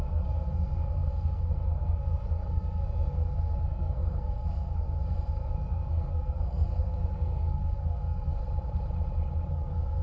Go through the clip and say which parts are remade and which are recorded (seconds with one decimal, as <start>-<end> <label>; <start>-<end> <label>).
0.0-8.4 remade; 8.4-9.5 recorded; 9.5-10.0 remade